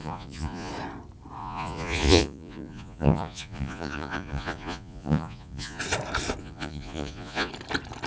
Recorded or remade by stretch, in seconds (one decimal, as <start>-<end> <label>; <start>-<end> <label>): 0.0-0.7 remade; 0.7-1.4 recorded; 1.4-5.8 remade; 5.8-6.4 recorded; 6.4-7.5 remade; 7.5-8.1 recorded